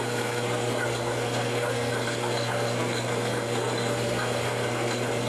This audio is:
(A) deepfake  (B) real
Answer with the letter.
A